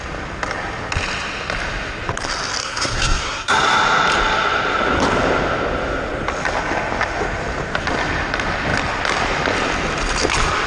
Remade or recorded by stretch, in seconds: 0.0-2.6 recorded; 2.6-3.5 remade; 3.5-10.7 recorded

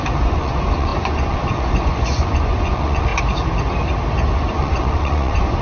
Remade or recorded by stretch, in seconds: 0.0-3.1 remade; 3.1-4.5 recorded; 4.5-5.6 remade

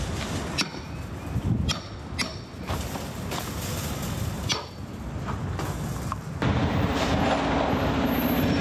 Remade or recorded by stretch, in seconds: 0.0-6.1 recorded; 6.1-7.2 remade; 7.2-8.6 recorded

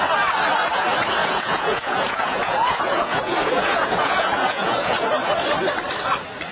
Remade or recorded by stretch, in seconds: 0.0-1.2 recorded; 1.2-5.1 remade; 5.1-6.5 recorded